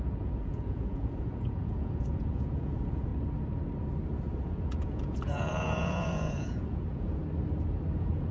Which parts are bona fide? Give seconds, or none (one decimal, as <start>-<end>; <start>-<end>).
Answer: 3.1-4.3; 7.2-7.9